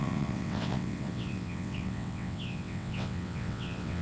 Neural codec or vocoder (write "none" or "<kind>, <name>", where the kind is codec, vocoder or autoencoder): vocoder, WaveNeXt